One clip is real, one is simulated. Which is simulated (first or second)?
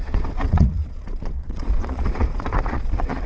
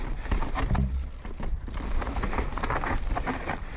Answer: first